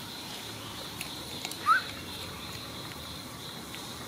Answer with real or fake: fake